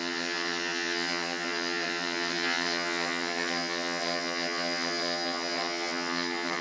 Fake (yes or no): yes